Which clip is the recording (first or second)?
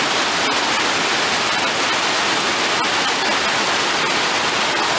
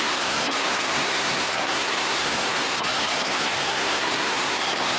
first